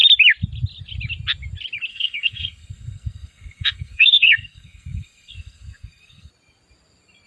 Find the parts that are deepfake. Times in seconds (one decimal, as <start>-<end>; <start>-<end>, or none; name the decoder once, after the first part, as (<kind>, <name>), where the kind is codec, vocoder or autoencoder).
1.9-6.3 (codec, SNAC)